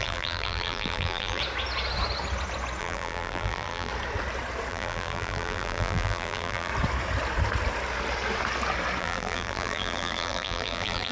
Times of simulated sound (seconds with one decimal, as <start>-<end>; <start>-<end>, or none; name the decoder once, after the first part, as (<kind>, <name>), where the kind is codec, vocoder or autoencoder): 0.0-1.4 (vocoder, BigVGAN v2); 2.8-3.9; 4.7-6.7; 9.0-11.1

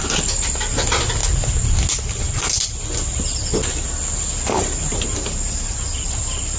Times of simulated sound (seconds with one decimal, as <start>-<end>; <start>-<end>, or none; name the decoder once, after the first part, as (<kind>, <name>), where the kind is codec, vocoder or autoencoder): none

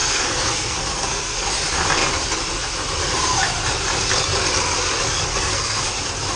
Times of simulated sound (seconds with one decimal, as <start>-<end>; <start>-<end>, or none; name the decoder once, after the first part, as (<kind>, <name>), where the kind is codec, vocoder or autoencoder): 0.0-1.5 (codec, SNAC); 5.3-5.8

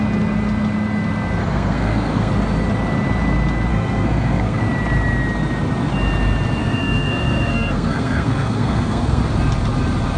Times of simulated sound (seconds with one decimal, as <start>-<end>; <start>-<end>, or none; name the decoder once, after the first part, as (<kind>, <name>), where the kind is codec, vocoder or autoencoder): 1.4-2.3 (codec, SNAC); 3.7-4.6; 6.6-9.2